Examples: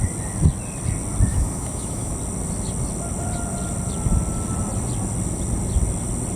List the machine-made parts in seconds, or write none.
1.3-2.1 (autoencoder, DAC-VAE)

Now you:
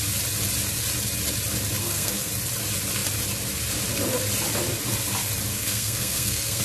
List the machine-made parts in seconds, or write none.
1.8-2.3 (codec, SNAC); 5.5-6.6

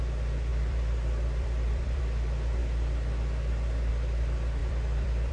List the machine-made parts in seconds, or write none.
0.5-2.0 (vocoder, BigVGAN v2); 4.6-5.3

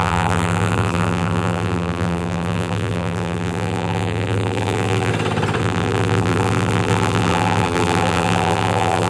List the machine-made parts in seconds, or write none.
0.0-5.1 (vocoder, BigVGAN v2); 5.6-9.1

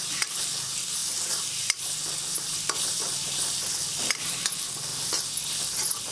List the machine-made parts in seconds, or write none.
none

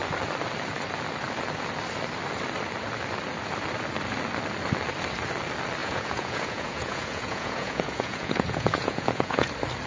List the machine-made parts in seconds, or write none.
5.8-9.5 (vocoder, Vocos)